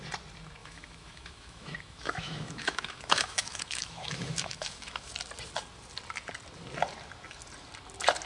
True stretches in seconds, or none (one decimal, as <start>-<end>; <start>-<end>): 0.0-0.6; 5.1-8.3